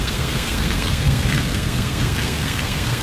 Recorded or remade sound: remade